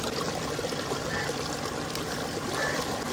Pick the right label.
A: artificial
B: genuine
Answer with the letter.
B